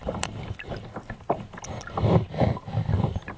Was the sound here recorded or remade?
recorded